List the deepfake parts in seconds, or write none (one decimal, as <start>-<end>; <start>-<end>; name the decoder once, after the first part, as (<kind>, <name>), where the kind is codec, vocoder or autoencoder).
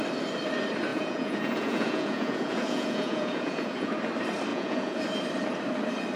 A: 0.9-3.9 (vocoder, Vocos); 4.5-5.0